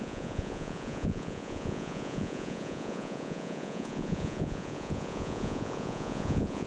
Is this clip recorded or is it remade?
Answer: remade